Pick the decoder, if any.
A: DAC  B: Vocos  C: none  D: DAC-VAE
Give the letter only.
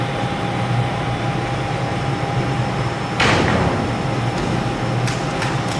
C